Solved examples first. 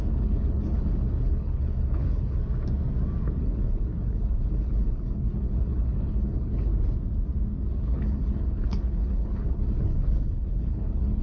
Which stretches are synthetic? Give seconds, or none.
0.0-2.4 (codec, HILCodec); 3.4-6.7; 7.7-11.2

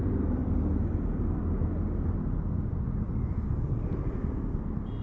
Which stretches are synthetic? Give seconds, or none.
none

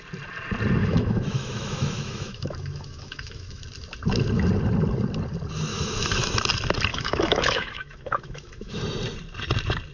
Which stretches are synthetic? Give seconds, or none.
0.8-3.6 (autoencoder, DAC-VAE); 5.7-6.3; 6.9-8.8

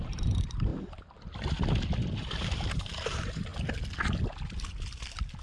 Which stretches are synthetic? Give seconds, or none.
0.0-0.7 (vocoder, BigVGAN v2); 2.2-3.5